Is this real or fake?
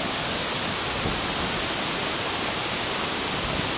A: real